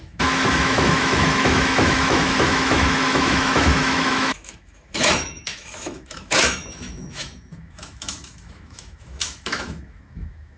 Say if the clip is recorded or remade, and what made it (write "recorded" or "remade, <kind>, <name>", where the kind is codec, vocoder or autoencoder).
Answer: remade, autoencoder, DAC-VAE